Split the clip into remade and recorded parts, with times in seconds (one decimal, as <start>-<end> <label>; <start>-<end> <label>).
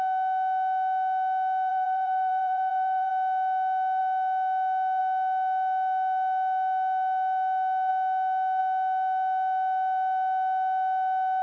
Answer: 0.0-1.7 recorded; 1.7-3.1 remade; 3.1-11.4 recorded